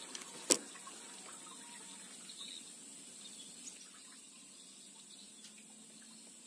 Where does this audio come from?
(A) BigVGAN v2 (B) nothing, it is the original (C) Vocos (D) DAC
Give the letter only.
B